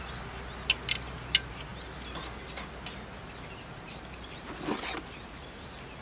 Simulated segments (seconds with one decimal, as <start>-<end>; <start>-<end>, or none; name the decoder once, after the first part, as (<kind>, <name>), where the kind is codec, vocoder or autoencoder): none